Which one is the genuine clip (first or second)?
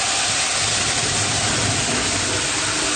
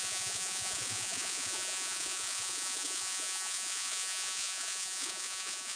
first